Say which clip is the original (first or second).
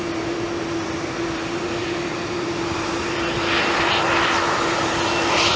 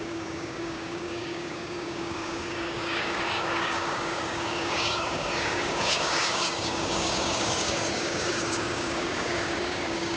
first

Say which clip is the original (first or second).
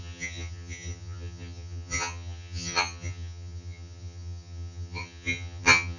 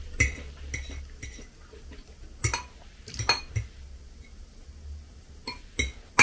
second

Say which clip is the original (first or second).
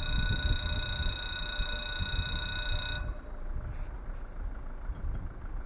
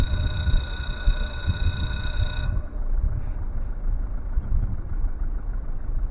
first